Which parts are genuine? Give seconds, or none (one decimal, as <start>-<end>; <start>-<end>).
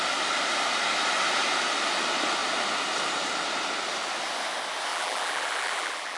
0.0-4.9